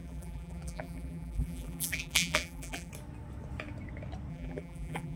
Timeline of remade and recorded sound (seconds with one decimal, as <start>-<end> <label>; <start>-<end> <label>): 0.0-2.9 remade; 2.9-4.3 recorded; 4.3-5.2 remade